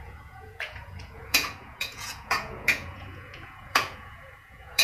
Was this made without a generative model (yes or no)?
no